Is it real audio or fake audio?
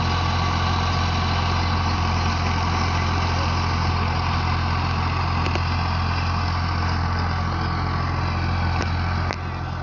real